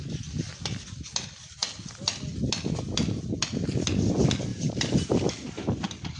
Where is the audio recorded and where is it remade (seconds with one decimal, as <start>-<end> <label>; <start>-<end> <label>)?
0.0-4.5 recorded; 4.5-5.3 remade; 5.3-6.2 recorded